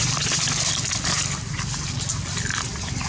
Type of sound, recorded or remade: recorded